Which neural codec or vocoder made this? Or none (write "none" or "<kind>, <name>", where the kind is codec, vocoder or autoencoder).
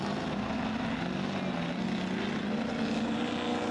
none